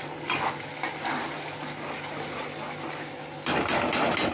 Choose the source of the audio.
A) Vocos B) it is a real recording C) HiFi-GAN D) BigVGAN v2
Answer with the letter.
B